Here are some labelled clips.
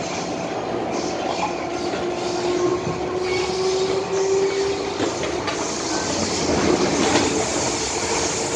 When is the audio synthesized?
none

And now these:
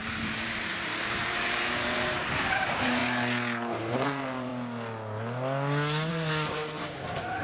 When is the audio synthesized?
0.0-3.0 (vocoder, BigVGAN v2); 3.9-4.5; 6.1-7.4

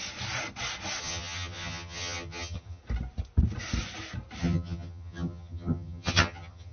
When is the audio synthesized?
1.0-2.8 (vocoder, HiFi-GAN); 4.4-6.7

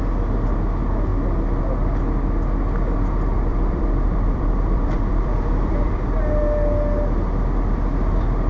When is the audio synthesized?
3.5-6.1 (vocoder, BigVGAN v2)

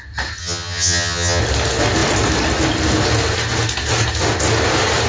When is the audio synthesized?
0.4-1.4 (vocoder, HiFi-GAN)

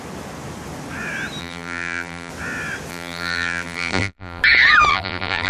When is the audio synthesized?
1.4-2.3 (vocoder, BigVGAN v2); 2.9-4.4; 4.9-5.5